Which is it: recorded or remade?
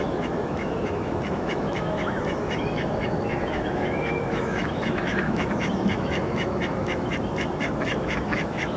remade